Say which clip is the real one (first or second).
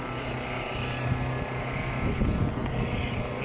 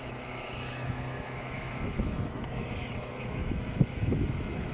first